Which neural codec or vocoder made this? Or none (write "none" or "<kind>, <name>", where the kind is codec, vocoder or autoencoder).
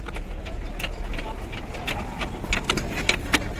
none